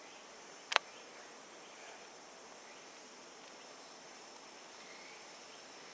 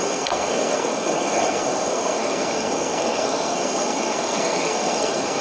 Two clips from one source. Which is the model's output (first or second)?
second